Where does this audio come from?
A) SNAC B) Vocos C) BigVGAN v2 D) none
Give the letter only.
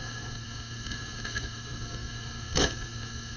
A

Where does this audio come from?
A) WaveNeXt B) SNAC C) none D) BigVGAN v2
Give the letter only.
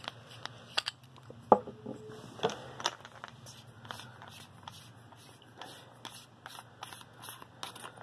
C